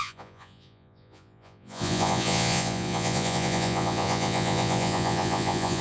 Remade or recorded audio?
remade